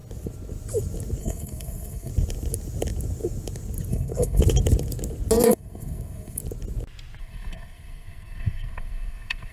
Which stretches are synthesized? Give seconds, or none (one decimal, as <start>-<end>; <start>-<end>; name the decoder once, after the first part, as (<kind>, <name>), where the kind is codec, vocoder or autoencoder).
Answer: 1.2-2.1 (codec, SNAC); 3.9-4.4; 5.5-6.4; 7.2-9.5